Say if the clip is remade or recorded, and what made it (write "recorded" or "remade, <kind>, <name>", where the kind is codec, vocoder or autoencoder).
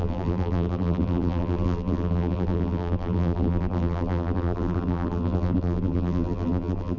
remade, vocoder, BigVGAN v2